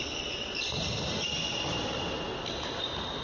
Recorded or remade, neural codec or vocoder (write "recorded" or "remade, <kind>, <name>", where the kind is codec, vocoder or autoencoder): recorded